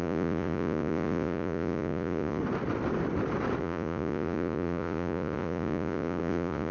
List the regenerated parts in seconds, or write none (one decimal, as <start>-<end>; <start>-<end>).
0.0-2.4; 3.6-6.7